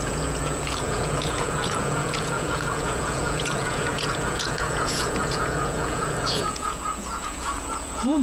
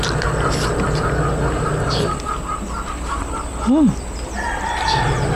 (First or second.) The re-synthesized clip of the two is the first